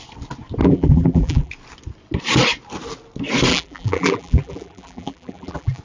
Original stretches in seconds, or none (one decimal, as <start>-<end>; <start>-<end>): 0.0-0.6; 1.5-3.5